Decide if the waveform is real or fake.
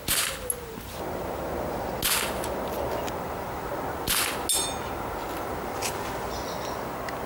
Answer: real